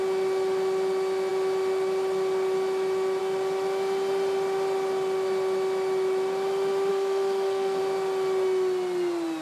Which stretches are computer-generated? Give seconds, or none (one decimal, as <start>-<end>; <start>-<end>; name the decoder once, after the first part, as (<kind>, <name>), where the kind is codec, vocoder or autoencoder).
6.9-7.8 (codec, SNAC)